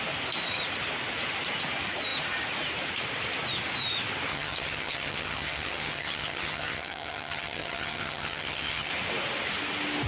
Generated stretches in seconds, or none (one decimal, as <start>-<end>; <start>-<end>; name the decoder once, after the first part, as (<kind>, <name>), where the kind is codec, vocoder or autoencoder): 4.3-8.9 (vocoder, HiFi-GAN)